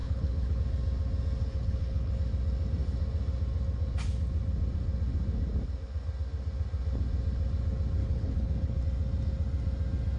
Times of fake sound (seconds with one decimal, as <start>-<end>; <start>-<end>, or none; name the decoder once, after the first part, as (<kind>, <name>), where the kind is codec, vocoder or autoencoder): 0.0-0.6 (codec, HILCodec); 1.4-2.1; 8.0-8.8